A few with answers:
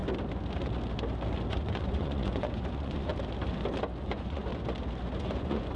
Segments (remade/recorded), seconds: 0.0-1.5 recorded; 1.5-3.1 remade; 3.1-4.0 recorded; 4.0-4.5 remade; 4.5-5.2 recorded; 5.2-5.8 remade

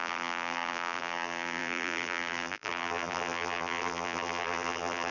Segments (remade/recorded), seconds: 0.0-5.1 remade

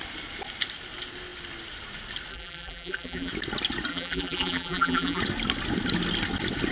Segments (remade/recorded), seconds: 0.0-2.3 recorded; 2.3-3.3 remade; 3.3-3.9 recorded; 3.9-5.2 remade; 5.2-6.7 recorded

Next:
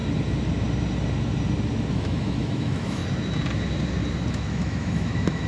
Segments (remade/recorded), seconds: 0.0-1.9 recorded; 1.9-3.0 remade; 3.0-4.3 recorded; 4.3-5.5 remade

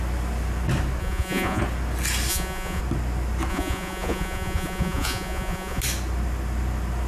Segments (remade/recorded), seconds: 0.0-1.0 recorded; 1.0-1.6 remade; 1.6-2.3 recorded; 2.3-2.8 remade; 2.8-3.5 recorded; 3.5-5.8 remade; 5.8-7.1 recorded

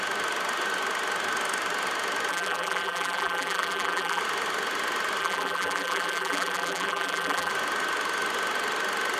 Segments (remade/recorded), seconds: 0.0-2.3 recorded; 2.3-4.2 remade; 4.2-5.2 recorded; 5.2-7.5 remade; 7.5-9.2 recorded

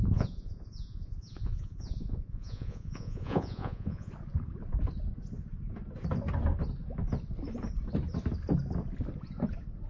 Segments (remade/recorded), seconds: 0.0-4.1 remade; 4.1-9.9 recorded